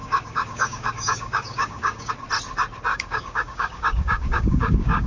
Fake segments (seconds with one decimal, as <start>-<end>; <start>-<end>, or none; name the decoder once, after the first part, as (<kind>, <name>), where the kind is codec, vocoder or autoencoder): 0.0-2.1 (codec, DAC); 2.9-5.1